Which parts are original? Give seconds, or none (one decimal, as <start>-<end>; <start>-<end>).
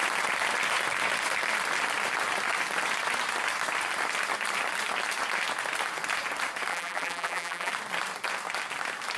0.0-6.7; 7.7-9.2